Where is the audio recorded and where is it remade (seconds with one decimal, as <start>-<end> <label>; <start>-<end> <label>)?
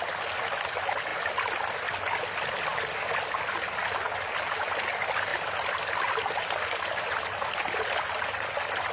0.0-8.9 recorded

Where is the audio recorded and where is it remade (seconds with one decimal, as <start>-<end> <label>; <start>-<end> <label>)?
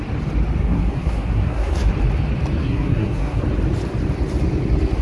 0.0-0.6 recorded; 0.6-1.9 remade; 1.9-2.6 recorded; 2.6-3.4 remade; 3.4-5.0 recorded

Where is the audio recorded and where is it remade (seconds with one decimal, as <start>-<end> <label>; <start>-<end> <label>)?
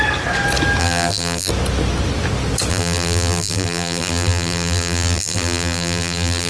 0.0-0.8 recorded; 0.8-1.5 remade; 1.5-2.7 recorded; 2.7-6.5 remade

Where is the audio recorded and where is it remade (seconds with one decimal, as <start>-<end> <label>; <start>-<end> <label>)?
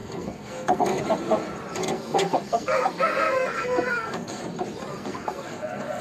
0.0-1.0 remade; 1.0-1.8 recorded; 1.8-4.4 remade; 4.4-4.9 recorded; 4.9-6.0 remade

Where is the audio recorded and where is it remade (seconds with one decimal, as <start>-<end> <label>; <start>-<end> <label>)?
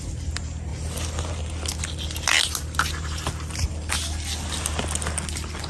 0.0-5.7 recorded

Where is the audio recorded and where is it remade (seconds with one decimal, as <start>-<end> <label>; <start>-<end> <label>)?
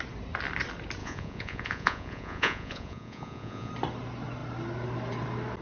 0.0-1.0 recorded; 1.0-3.7 remade; 3.7-5.6 recorded